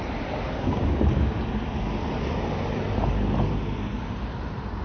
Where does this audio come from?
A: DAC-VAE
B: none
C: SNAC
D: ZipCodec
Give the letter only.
B